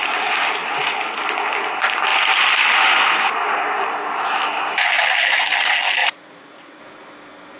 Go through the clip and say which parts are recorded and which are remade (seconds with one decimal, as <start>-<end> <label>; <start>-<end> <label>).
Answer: 0.0-6.0 recorded; 6.0-6.8 remade; 6.8-7.6 recorded